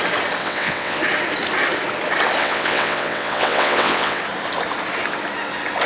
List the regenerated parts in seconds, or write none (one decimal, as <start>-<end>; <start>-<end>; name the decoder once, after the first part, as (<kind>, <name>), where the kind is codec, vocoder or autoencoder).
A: 0.4-1.0 (vocoder, WaveNeXt); 2.4-4.2